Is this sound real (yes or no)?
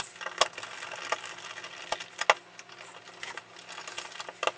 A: yes